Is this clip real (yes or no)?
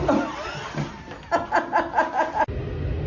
yes